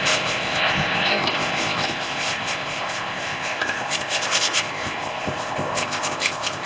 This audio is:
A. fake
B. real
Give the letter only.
A